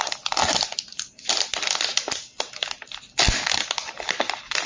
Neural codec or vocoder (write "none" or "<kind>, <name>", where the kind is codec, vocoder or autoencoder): none